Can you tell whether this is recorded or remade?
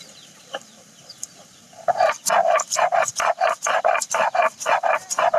remade